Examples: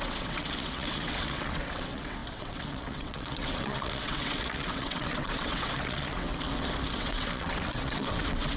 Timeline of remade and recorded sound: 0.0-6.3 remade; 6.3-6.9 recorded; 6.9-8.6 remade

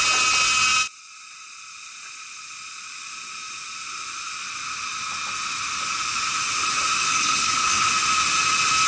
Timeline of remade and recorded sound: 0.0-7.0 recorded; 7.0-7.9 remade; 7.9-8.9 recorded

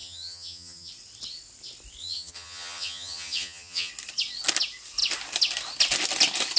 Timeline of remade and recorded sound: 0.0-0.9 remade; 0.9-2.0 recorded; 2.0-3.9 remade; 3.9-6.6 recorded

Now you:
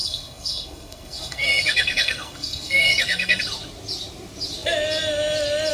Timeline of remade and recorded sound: 0.0-3.4 remade; 3.4-5.7 recorded

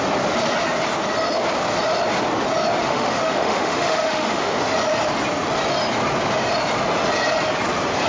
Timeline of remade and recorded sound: 0.0-2.8 recorded; 2.8-4.6 remade; 4.6-8.1 recorded

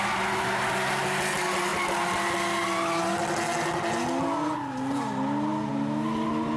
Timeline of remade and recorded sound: 0.0-6.6 recorded

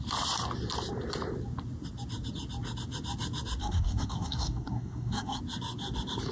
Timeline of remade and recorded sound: 0.0-3.6 recorded; 3.6-5.4 remade; 5.4-6.3 recorded